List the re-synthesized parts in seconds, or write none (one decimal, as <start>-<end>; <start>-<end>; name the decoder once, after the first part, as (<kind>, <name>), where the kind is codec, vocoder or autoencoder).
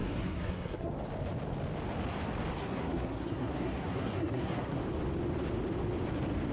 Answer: 0.0-0.9 (codec, SNAC); 2.6-4.8